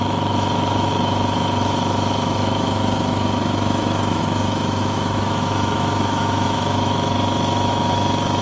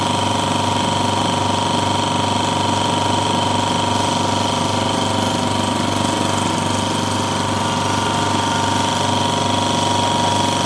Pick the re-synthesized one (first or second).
first